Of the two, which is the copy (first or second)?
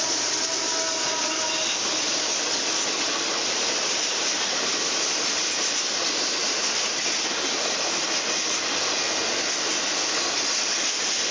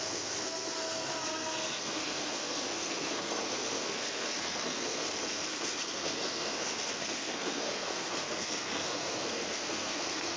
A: second